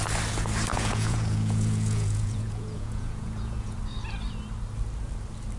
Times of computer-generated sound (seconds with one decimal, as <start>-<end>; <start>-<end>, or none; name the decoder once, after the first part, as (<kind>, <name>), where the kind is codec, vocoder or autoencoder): 0.7-3.8 (vocoder, Vocos)